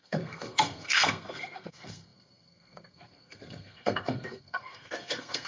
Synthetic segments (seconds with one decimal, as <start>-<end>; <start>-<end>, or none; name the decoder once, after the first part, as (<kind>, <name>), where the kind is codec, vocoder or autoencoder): 0.0-5.5 (codec, SNAC)